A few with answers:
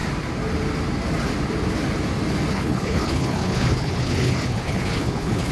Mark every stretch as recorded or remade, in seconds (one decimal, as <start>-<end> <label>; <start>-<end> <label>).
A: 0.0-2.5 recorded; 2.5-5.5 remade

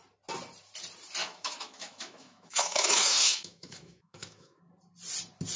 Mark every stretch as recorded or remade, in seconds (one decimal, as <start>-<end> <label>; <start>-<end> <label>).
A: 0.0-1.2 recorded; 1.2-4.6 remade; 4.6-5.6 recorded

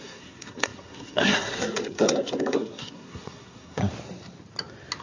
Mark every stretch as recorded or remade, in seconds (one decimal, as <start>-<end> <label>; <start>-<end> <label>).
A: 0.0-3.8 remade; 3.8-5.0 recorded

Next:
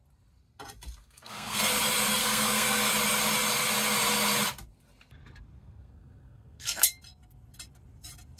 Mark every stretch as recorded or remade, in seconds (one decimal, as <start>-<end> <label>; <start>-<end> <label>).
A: 0.0-1.0 recorded; 1.0-1.7 remade; 1.7-2.2 recorded; 2.2-2.9 remade; 2.9-5.6 recorded; 5.6-6.9 remade; 6.9-8.4 recorded

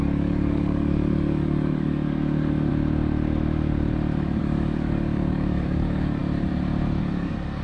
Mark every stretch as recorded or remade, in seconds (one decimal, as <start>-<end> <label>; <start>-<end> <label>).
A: 0.0-2.7 remade; 2.7-4.4 recorded; 4.4-6.2 remade; 6.2-7.0 recorded; 7.0-7.6 remade

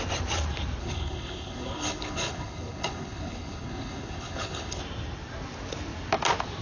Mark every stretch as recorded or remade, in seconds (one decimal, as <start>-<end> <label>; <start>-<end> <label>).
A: 0.0-0.8 recorded; 0.8-4.8 remade; 4.8-6.6 recorded

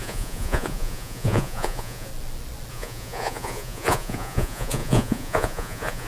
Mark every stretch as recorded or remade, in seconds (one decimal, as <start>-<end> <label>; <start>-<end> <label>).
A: 0.0-2.1 remade; 2.1-2.7 recorded; 2.7-6.1 remade

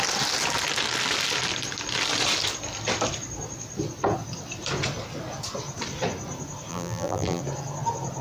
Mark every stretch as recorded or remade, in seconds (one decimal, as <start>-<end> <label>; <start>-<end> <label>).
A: 0.0-6.7 recorded; 6.7-7.4 remade; 7.4-8.2 recorded